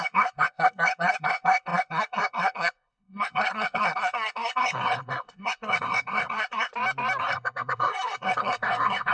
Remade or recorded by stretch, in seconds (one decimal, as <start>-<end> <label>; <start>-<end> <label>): 0.0-6.7 remade; 6.7-7.2 recorded; 7.2-9.1 remade